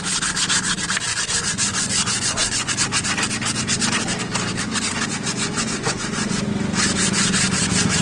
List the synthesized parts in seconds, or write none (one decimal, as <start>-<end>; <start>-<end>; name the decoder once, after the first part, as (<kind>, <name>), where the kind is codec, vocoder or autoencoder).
1.1-2.7 (vocoder, Vocos); 5.3-6.4